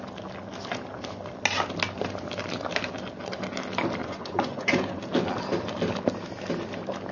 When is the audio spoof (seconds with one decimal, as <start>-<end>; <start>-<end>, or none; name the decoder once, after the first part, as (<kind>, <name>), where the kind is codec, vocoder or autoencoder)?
4.0-5.0 (vocoder, Vocos)